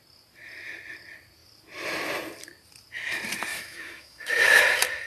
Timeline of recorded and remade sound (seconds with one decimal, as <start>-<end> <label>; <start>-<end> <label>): 0.0-3.5 recorded; 3.5-4.6 remade; 4.6-5.1 recorded